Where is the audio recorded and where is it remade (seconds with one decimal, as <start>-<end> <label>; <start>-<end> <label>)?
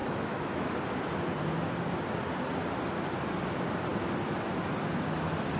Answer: 0.0-0.7 remade; 0.7-5.6 recorded